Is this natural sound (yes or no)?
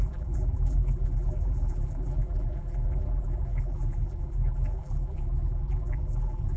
no